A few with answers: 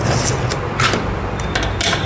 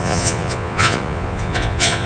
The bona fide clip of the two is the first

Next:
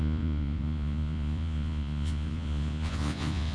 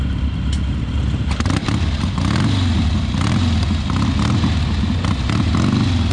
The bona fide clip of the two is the second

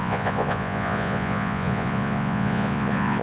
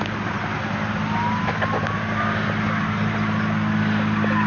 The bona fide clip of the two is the second